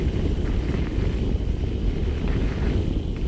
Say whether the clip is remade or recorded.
recorded